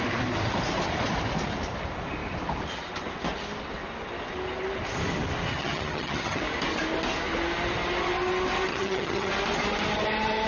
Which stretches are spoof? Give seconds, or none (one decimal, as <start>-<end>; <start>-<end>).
5.5-6.4; 8.7-9.3